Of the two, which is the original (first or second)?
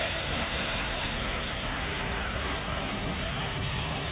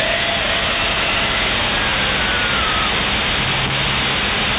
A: second